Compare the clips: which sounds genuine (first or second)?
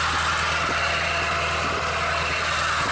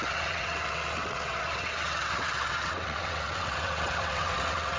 first